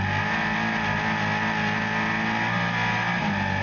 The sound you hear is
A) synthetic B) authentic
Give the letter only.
B